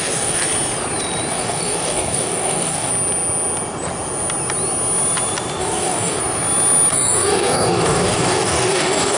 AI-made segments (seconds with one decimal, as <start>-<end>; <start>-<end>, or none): 0.0-0.4; 1.3-2.9; 5.6-6.2; 6.9-9.2